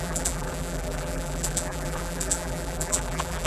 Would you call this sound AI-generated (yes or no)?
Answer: yes